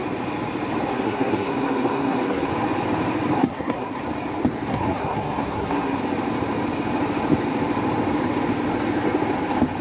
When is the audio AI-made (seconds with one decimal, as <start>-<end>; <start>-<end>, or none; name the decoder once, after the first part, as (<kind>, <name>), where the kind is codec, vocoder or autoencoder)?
0.9-2.5 (codec, SNAC); 3.4-4.0; 4.7-6.0